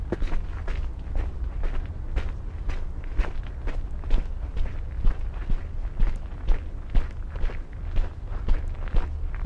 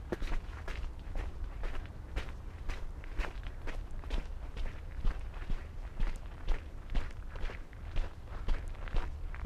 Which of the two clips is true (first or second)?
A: first